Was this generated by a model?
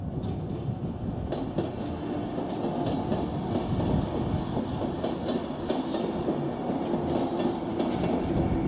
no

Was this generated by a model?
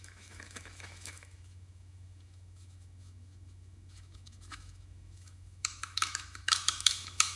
yes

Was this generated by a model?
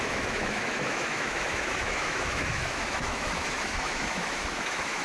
yes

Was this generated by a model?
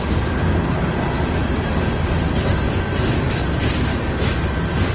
no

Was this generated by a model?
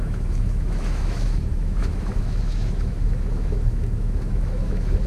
yes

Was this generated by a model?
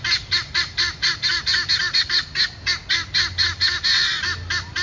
no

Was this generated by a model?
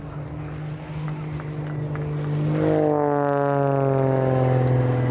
no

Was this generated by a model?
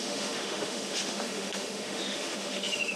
yes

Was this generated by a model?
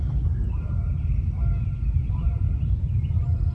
no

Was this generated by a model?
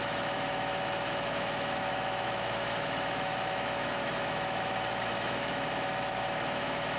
yes